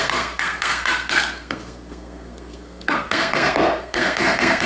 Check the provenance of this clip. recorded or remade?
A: remade